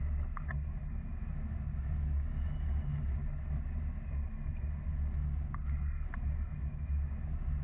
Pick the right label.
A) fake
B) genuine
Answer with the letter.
B